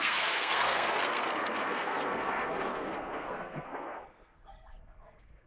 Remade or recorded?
remade